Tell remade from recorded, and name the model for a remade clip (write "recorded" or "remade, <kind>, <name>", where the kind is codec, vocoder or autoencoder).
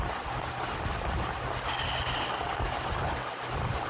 recorded